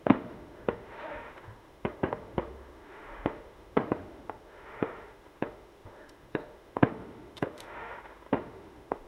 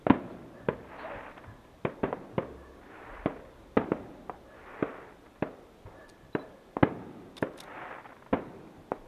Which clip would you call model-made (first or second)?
first